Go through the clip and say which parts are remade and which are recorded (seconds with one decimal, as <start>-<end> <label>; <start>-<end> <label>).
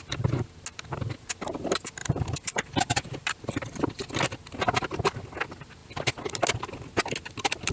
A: 0.0-2.0 recorded; 2.0-4.2 remade; 4.2-7.7 recorded